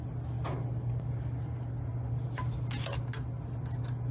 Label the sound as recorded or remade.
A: recorded